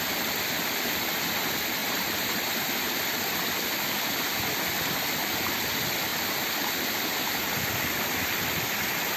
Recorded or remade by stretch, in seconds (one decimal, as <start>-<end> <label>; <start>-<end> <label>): 0.0-1.8 recorded; 1.8-2.7 remade; 2.7-9.2 recorded